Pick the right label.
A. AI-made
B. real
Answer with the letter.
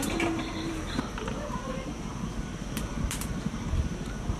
A